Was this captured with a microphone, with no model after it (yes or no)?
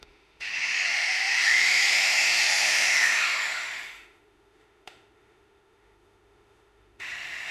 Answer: no